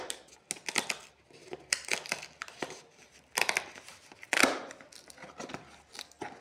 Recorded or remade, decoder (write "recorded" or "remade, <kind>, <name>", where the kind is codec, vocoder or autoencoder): recorded